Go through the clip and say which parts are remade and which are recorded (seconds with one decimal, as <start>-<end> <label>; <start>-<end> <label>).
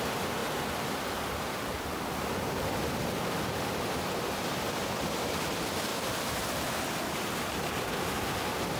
0.0-0.4 remade; 0.4-5.2 recorded; 5.2-5.9 remade; 5.9-7.9 recorded; 7.9-8.8 remade